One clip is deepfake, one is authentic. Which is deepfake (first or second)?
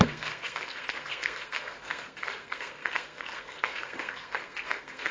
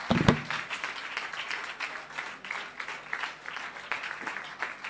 first